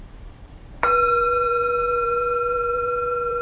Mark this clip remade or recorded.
remade